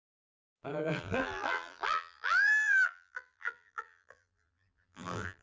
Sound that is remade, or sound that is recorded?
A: remade